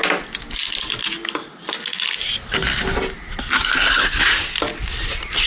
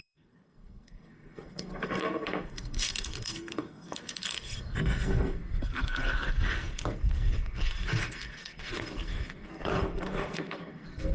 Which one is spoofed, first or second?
second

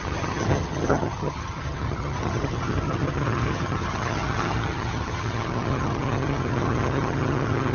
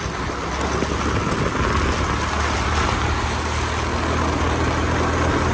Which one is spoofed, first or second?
first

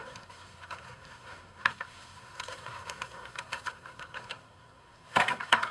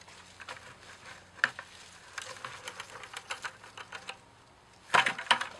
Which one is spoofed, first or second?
first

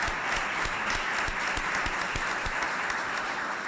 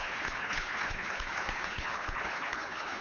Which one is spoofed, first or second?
second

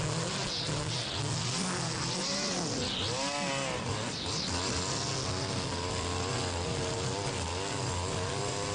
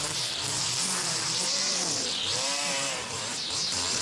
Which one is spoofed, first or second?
second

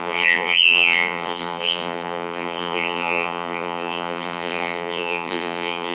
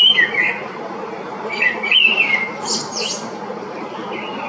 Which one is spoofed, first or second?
first